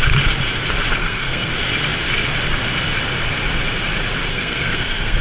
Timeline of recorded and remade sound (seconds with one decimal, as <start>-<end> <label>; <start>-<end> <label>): 0.0-1.0 recorded; 1.0-1.5 remade; 1.5-4.3 recorded; 4.3-5.2 remade